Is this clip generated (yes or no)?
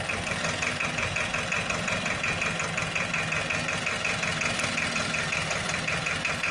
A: no